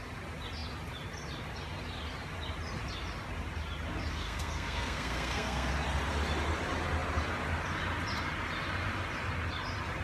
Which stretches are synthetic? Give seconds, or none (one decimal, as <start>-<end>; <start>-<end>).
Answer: 4.1-5.7

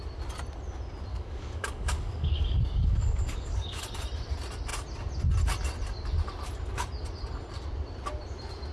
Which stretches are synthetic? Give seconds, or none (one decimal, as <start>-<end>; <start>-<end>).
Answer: 1.1-3.8

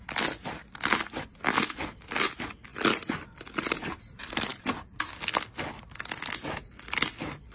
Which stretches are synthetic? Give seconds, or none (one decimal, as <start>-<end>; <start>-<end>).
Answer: none

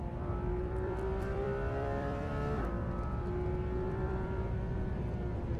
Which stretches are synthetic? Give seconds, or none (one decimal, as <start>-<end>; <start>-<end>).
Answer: 0.0-2.3; 3.9-5.6

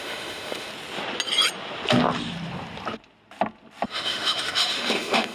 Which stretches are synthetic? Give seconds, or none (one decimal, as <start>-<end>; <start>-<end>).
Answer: 0.0-0.7; 3.9-5.3

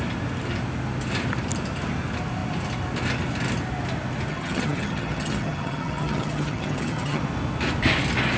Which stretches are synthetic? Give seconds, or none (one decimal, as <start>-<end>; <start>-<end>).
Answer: 4.3-7.2

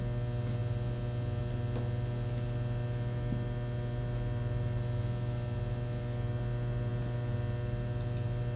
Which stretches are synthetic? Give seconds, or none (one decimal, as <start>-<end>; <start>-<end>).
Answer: none

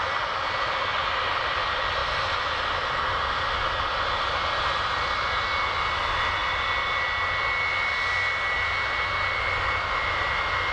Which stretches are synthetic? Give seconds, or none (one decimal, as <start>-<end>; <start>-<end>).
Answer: none